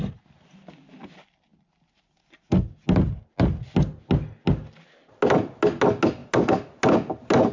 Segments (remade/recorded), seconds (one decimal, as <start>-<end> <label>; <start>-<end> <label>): 0.0-7.5 recorded